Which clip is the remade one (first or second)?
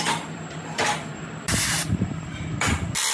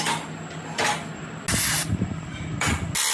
first